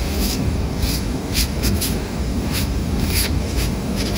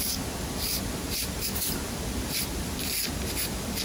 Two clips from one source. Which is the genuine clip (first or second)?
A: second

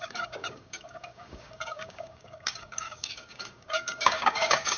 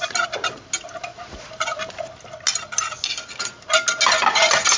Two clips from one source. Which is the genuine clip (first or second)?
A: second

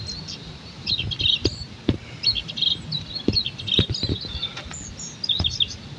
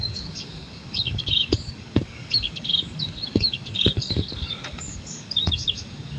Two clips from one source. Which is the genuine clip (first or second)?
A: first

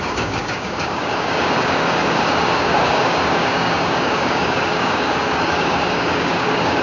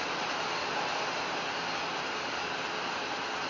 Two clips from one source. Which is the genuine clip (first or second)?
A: second